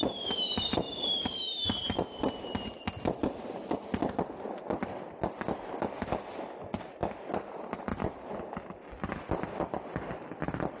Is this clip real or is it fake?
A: real